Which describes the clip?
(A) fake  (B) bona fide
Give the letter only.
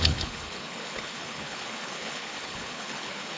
A